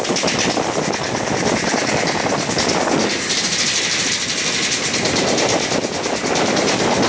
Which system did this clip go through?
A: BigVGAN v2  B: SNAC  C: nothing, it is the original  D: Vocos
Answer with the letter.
C